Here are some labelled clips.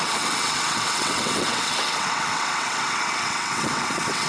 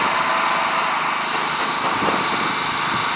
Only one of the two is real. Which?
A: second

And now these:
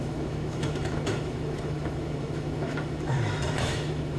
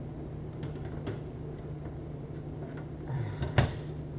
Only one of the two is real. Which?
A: second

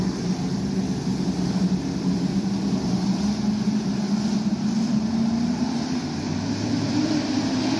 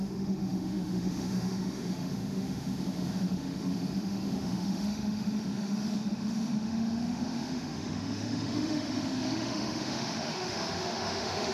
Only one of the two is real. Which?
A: first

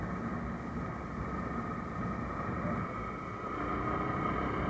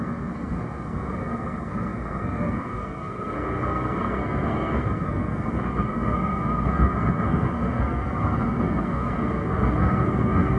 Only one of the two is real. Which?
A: first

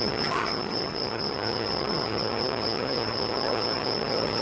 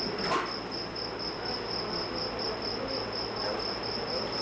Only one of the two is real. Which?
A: second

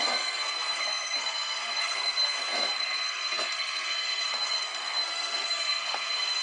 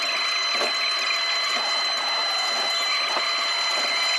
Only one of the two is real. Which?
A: second